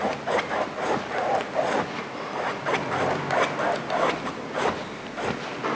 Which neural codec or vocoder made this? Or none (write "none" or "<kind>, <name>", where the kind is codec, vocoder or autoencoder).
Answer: none